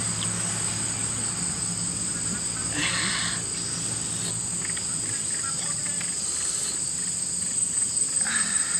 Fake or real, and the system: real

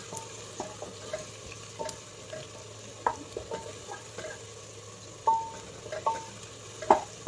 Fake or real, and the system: real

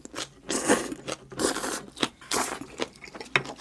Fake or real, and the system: real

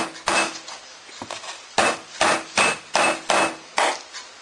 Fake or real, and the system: real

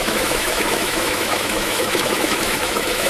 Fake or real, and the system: fake, autoencoder, DAC-VAE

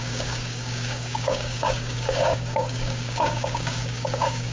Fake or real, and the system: fake, codec, DAC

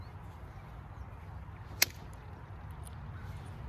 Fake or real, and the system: real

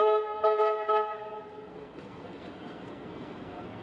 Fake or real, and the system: fake, codec, SNAC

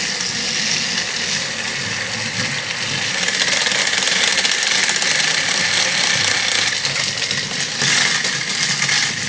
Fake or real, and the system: real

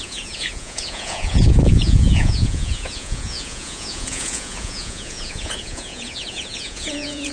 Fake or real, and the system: fake, vocoder, Vocos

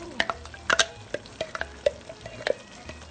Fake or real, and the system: real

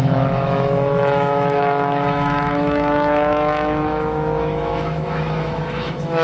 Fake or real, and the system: fake, autoencoder, DAC-VAE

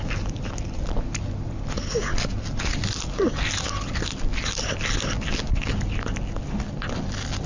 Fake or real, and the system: real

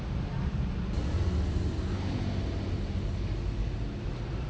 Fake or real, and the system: real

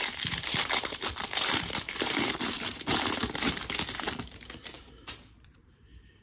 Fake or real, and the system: fake, vocoder, BigVGAN v2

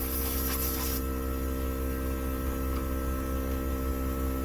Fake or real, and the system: real